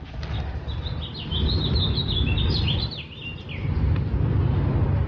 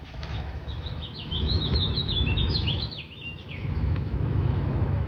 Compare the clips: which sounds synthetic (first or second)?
second